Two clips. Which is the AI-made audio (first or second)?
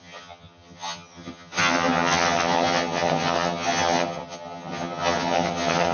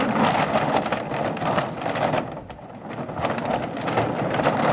first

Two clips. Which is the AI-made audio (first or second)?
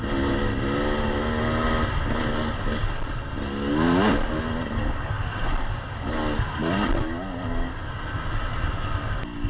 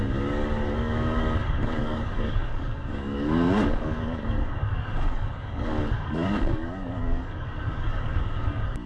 second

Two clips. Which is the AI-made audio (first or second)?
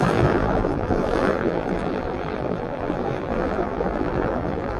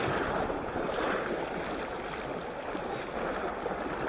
first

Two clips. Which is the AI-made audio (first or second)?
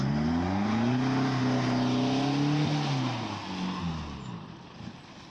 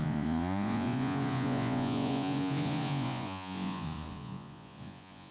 second